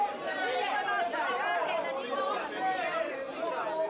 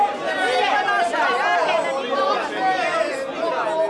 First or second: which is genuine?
second